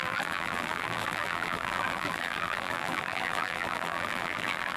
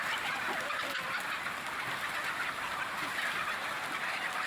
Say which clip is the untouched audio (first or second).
second